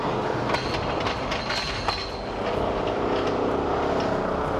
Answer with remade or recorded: recorded